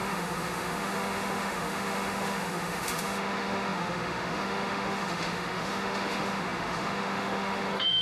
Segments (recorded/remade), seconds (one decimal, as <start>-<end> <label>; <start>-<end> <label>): 0.0-8.0 remade